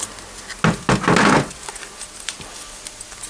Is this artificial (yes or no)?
no